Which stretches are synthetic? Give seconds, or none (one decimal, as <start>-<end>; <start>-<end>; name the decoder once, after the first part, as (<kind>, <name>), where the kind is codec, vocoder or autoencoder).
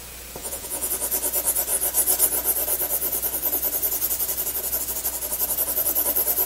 0.4-0.9 (vocoder, Vocos)